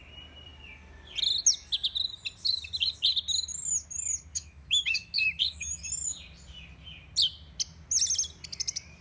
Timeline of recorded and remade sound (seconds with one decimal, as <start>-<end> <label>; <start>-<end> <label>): 0.0-4.3 recorded; 4.3-5.8 remade; 5.8-9.0 recorded